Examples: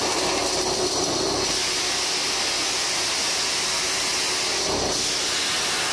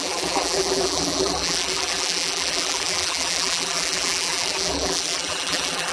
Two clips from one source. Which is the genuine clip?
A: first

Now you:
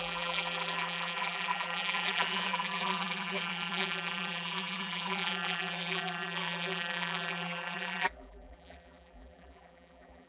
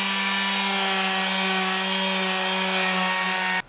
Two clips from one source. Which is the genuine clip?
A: second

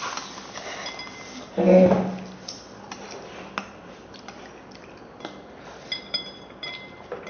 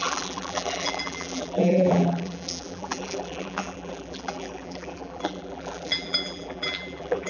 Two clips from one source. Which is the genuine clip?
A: first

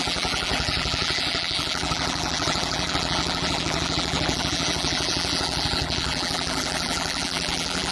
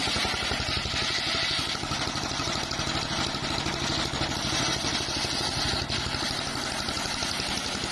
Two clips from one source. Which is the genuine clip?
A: second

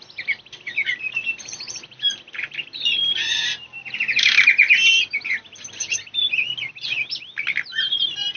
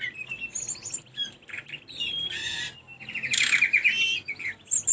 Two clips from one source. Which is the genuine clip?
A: second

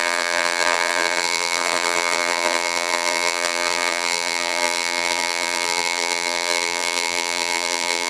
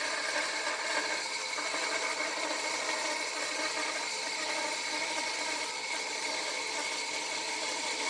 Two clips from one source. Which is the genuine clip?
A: second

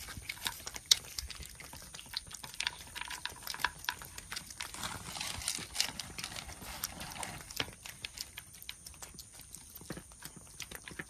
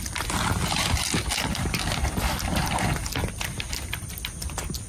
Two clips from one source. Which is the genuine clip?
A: second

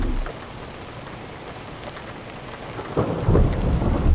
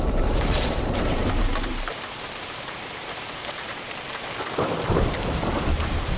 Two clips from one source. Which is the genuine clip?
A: first